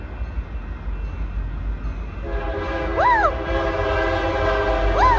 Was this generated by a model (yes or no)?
no